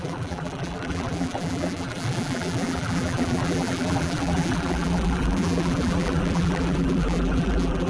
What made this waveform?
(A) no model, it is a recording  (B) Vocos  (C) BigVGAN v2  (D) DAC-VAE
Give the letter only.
C